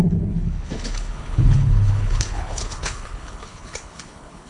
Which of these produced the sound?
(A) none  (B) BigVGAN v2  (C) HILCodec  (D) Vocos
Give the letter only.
C